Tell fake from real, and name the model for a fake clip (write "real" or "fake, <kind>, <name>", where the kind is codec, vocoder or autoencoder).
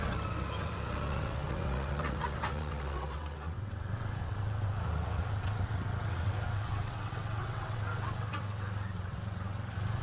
fake, vocoder, WaveNeXt